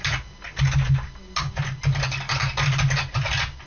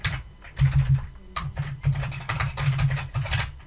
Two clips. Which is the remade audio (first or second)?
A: second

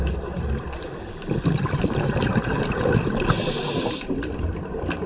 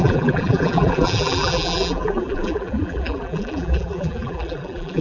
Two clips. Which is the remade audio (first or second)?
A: second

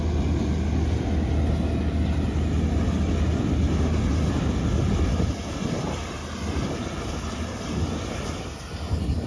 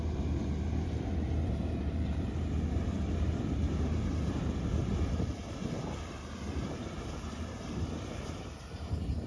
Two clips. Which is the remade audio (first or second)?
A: second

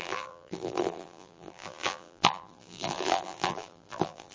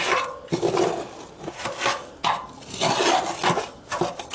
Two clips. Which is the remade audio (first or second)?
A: first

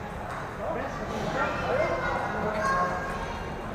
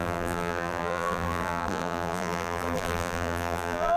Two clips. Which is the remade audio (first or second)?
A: second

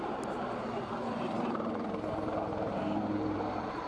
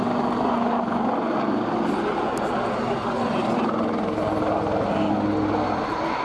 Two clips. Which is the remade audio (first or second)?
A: first